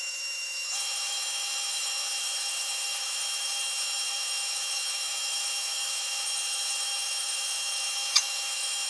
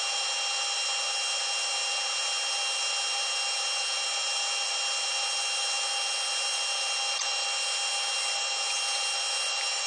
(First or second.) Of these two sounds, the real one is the second